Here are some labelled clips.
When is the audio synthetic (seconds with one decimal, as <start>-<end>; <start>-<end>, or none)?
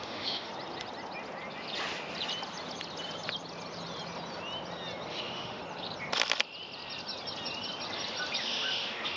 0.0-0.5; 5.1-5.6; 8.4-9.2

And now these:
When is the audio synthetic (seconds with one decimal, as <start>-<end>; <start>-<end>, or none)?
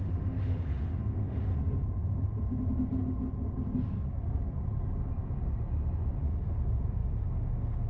0.0-1.5; 6.2-7.9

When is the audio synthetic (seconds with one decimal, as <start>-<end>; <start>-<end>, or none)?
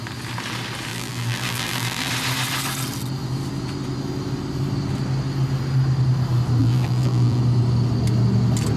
0.9-2.1; 6.6-7.4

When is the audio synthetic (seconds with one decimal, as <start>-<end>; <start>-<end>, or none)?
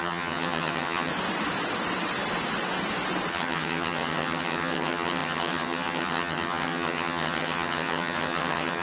0.0-1.1; 3.3-8.8